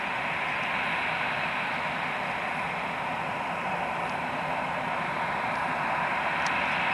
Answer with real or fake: real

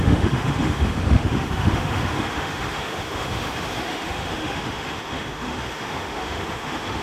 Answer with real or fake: fake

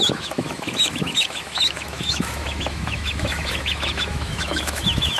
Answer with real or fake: fake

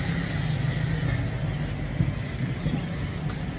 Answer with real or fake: real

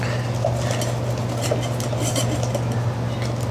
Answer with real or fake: real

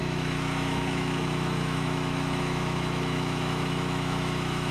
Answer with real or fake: fake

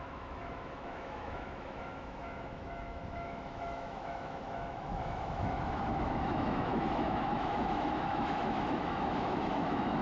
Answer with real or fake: fake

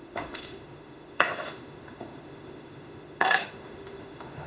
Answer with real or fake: fake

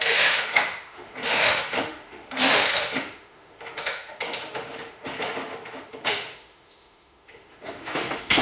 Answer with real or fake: fake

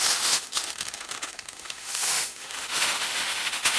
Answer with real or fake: fake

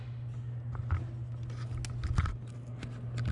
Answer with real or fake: real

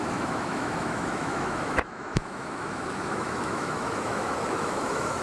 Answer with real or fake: fake